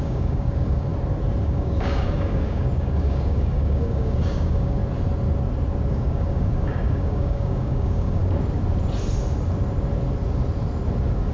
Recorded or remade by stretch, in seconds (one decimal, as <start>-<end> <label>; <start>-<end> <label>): 0.0-0.9 remade; 0.9-1.4 recorded; 1.4-4.8 remade; 4.8-5.9 recorded; 5.9-8.2 remade; 8.2-11.3 recorded